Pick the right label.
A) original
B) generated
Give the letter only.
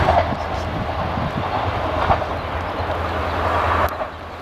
A